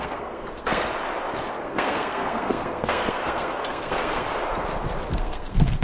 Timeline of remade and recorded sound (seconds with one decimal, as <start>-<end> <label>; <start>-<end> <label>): 0.0-0.9 remade; 0.9-1.6 recorded; 1.6-4.3 remade; 4.3-5.1 recorded; 5.1-5.8 remade